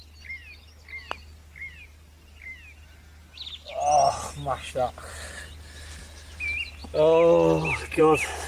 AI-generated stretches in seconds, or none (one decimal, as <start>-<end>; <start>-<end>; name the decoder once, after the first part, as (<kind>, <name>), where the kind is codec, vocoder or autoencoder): none